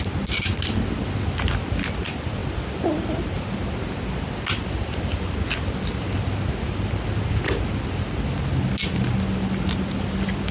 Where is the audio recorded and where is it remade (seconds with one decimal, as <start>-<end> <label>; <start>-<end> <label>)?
0.0-10.5 recorded